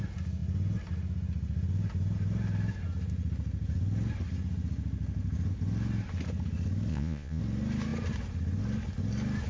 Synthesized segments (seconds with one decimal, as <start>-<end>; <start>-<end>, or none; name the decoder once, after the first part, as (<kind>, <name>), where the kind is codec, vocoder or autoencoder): 6.9-7.4 (vocoder, Vocos)

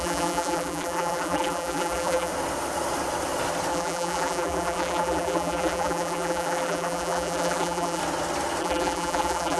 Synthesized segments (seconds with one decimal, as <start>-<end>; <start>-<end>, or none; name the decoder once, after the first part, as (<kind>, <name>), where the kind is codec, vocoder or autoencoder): 0.0-2.3 (vocoder, BigVGAN v2); 3.7-8.0; 8.6-9.6